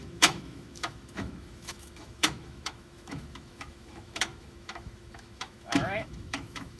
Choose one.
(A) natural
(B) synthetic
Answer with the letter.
B